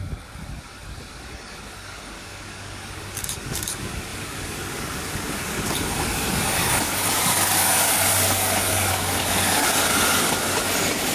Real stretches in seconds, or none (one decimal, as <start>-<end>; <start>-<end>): none